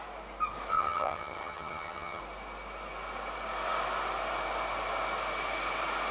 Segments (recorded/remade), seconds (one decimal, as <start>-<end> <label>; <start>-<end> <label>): 0.0-0.7 recorded; 0.7-2.2 remade; 2.2-6.1 recorded